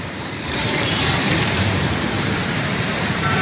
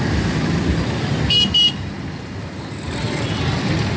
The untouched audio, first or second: second